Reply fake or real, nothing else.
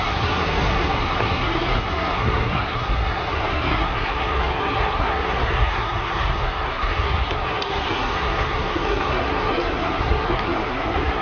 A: fake